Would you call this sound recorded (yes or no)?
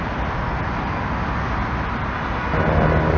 yes